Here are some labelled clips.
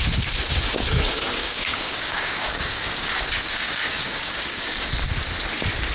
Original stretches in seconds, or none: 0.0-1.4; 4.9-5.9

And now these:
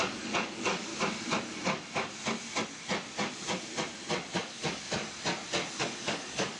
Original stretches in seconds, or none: 0.9-4.3; 5.0-5.8

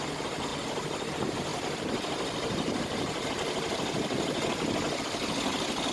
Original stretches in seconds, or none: 0.0-5.9

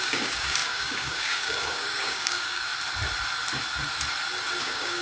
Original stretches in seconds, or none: 2.7-4.6

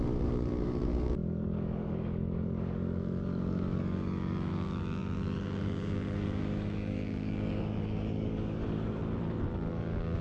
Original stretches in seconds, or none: 9.0-9.7

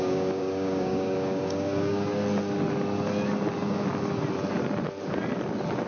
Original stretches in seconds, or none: 2.1-5.9

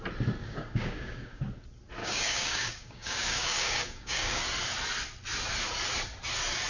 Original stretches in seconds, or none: 0.0-0.4; 1.4-2.0; 4.4-6.7